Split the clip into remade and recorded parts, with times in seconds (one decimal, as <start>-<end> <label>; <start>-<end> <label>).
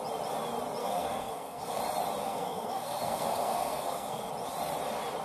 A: 0.0-0.8 recorded; 0.8-1.8 remade; 1.8-2.2 recorded; 2.2-4.3 remade; 4.3-5.2 recorded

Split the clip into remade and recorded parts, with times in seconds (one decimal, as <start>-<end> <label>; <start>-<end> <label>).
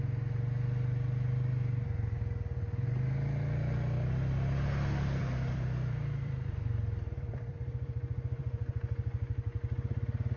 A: 0.0-5.2 recorded; 5.2-8.7 remade; 8.7-10.4 recorded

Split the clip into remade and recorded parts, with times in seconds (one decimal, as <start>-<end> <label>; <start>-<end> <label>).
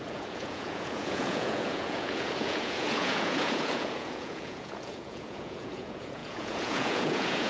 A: 0.0-7.5 remade